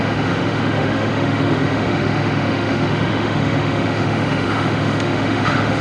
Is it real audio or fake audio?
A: fake